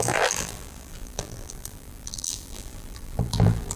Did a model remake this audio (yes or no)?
yes